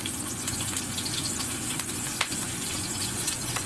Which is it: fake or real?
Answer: fake